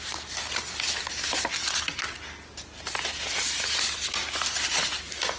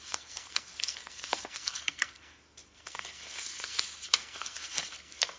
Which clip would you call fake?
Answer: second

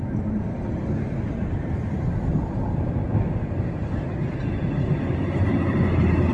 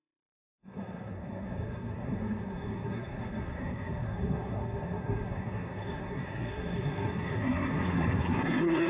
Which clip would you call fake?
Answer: second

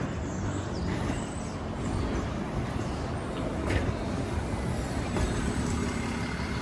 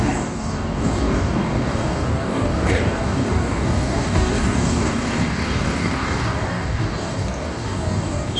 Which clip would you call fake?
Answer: second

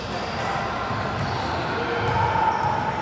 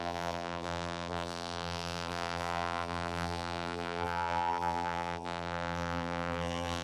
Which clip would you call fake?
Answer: second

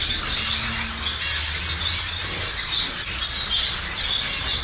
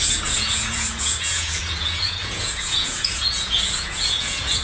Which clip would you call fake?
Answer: second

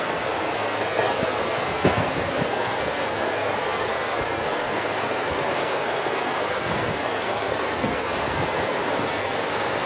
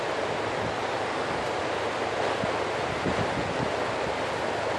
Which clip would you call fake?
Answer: first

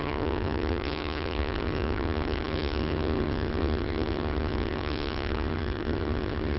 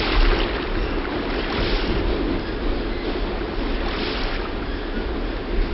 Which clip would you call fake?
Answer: first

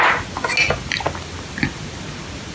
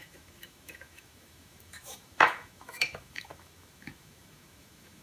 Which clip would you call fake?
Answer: second